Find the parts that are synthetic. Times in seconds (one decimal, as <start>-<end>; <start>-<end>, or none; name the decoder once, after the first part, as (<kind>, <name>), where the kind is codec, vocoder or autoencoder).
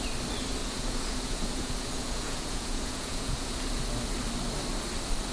0.6-3.8 (vocoder, Vocos)